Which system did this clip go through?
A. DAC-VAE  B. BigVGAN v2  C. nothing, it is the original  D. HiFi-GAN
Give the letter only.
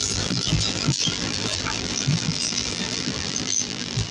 B